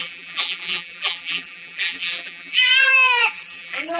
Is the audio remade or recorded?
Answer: remade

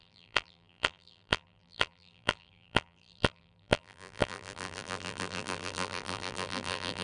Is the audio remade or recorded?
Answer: remade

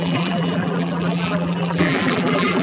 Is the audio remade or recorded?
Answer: remade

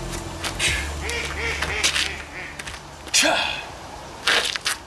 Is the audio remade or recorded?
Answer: recorded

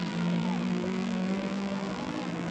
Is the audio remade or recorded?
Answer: remade